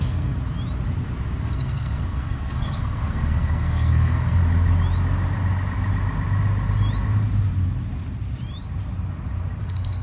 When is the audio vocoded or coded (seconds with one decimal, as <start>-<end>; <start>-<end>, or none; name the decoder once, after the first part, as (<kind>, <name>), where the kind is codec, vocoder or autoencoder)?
0.0-0.4 (codec, SNAC); 1.4-4.4; 9.6-10.0